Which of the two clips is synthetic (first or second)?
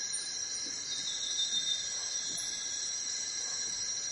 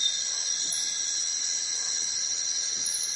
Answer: first